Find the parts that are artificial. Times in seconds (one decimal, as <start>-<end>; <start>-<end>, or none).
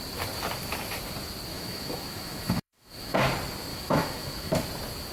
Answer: 1.5-3.2; 3.7-4.5